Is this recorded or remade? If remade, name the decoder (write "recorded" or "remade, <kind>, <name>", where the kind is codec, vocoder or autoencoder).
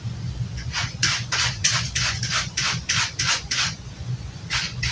remade, vocoder, Vocos